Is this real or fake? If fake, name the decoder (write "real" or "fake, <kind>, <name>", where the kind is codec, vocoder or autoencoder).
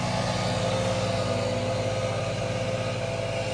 real